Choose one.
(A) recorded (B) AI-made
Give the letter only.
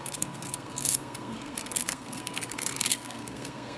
B